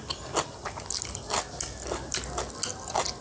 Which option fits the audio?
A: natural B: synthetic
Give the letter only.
A